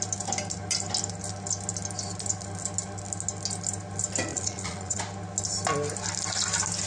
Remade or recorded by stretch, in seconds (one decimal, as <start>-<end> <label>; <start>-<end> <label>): 0.0-4.3 recorded; 4.3-5.0 remade; 5.0-6.9 recorded

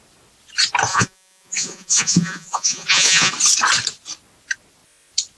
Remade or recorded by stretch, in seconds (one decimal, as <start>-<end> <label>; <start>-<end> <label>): 0.0-0.9 recorded; 0.9-3.3 remade; 3.3-5.4 recorded

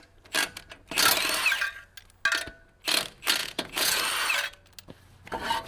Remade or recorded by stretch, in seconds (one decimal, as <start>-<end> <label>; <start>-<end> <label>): 0.0-3.4 recorded; 3.4-4.0 remade; 4.0-5.7 recorded

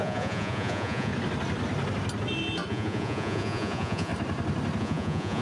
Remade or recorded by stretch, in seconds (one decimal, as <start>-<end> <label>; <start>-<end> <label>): 0.0-1.1 remade; 1.1-2.7 recorded; 2.7-4.1 remade; 4.1-4.8 recorded; 4.8-5.4 remade

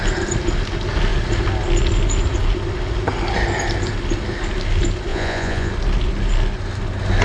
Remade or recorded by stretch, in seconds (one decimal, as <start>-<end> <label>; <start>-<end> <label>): 0.0-5.1 recorded; 5.1-5.7 remade; 5.7-7.2 recorded

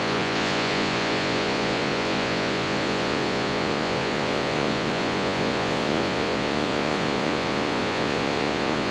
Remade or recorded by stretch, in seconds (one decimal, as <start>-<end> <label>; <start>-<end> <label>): 0.0-8.9 remade

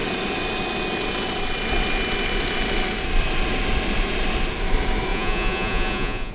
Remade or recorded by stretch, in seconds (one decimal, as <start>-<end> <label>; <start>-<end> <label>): 0.0-5.1 recorded; 5.1-6.3 remade